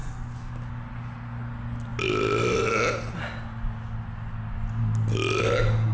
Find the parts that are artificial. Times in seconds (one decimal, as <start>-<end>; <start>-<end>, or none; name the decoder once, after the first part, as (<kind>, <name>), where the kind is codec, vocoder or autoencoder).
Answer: none